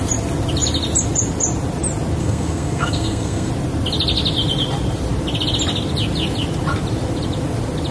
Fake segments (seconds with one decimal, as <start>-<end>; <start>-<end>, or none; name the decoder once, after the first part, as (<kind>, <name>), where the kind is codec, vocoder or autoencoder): 2.2-3.5 (codec, SNAC)